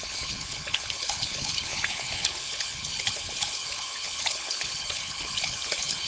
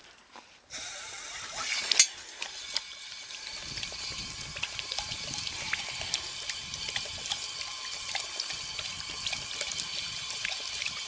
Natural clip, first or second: second